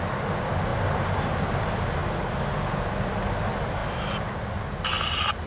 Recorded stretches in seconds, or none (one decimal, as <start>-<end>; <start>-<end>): 0.0-5.5